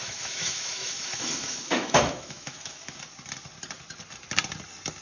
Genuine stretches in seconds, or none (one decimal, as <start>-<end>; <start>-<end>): 3.0-5.0